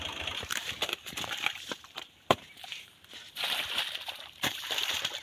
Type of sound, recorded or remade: remade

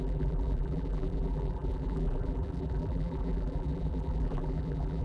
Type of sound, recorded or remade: remade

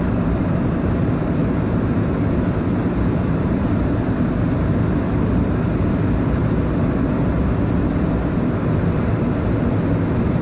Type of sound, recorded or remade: remade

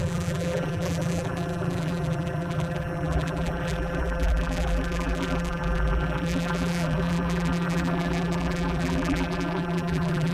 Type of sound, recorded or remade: remade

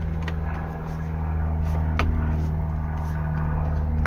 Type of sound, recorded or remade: recorded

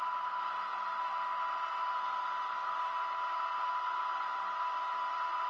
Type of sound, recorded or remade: recorded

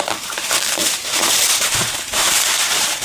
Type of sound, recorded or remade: remade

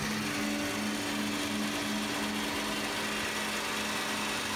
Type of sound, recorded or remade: recorded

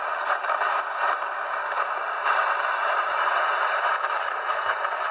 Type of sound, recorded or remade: remade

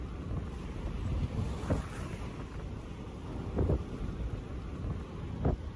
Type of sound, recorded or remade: recorded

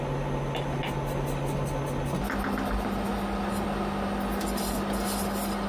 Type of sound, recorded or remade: recorded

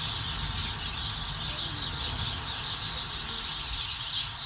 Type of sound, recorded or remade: recorded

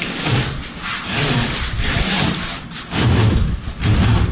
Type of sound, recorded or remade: remade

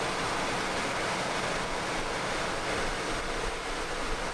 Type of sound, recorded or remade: recorded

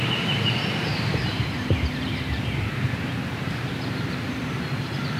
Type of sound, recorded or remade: remade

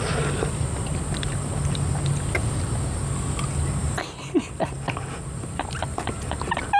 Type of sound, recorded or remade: recorded